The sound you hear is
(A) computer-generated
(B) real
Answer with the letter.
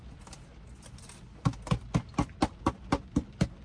B